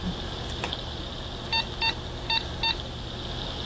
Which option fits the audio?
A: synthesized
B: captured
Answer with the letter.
B